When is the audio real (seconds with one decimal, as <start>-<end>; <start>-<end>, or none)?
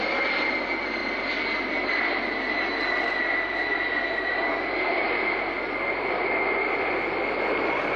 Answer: 0.0-8.0